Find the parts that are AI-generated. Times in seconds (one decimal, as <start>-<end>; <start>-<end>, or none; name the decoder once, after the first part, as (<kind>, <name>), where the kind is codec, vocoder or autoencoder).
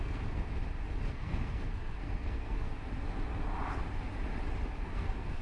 0.0-0.5 (codec, SNAC); 1.1-2.7; 4.8-5.4